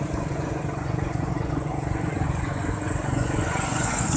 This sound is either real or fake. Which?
fake